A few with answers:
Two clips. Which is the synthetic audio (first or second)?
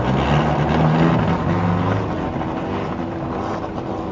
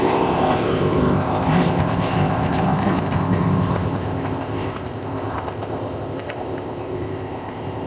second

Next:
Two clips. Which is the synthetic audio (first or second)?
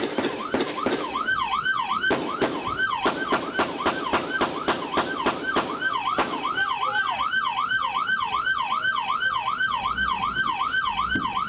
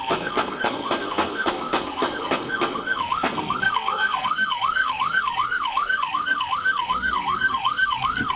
second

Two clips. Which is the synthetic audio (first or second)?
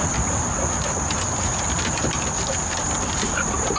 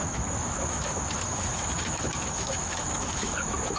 second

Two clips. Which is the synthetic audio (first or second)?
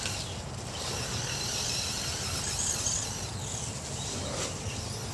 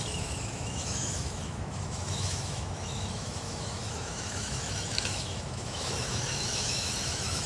second